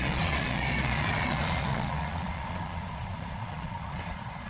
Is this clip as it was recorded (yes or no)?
no